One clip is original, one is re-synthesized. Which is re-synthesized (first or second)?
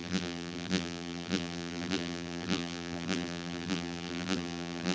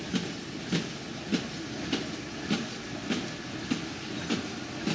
first